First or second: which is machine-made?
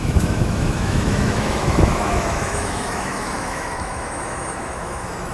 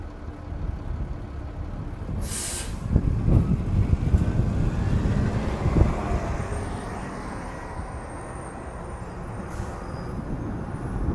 first